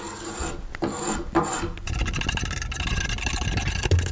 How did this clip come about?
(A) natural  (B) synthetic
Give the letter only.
A